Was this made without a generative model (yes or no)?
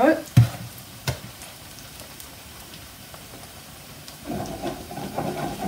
no